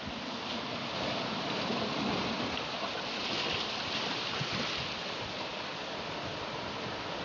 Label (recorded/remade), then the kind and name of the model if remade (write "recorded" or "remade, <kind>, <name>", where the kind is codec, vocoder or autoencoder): recorded